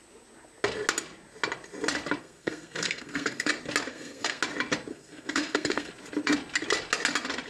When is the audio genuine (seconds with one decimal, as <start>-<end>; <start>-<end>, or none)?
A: 0.0-2.2; 3.5-3.9; 4.4-4.9; 5.9-7.5